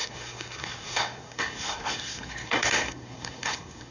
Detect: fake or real fake